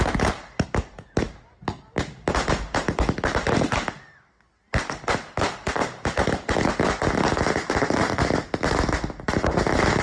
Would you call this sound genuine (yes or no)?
yes